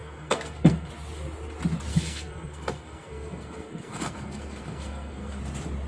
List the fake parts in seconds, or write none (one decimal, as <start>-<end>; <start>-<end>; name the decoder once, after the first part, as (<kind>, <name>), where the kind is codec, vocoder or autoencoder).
0.0-0.9 (codec, SNAC); 1.9-5.4